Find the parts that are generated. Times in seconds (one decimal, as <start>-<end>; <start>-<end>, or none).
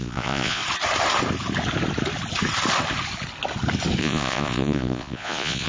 0.0-0.6; 4.0-5.7